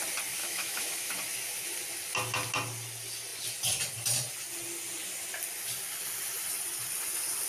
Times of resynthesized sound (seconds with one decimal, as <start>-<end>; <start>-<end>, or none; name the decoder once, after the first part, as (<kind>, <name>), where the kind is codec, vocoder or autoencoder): 0.4-1.1 (autoencoder, DAC-VAE)